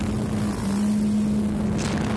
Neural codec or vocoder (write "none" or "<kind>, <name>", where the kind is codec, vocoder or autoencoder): none